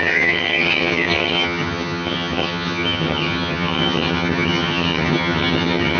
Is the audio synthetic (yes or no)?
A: yes